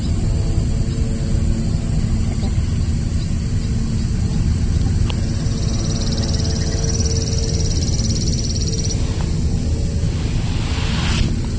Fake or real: real